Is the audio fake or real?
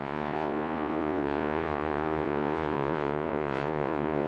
fake